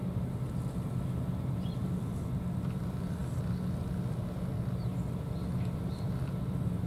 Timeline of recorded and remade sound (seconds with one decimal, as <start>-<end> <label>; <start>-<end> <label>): 0.0-1.8 recorded; 1.8-2.8 remade; 2.8-6.9 recorded